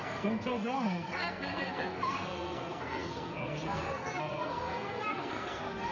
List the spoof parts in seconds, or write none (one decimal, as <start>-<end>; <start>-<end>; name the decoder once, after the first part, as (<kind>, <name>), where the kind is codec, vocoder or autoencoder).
0.0-5.9 (codec, SNAC)